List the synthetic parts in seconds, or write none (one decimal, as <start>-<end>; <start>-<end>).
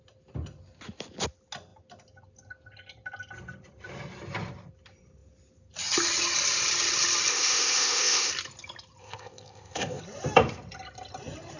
7.3-8.3; 9.0-10.0